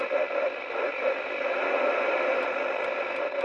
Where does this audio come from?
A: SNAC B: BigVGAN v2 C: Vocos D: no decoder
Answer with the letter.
D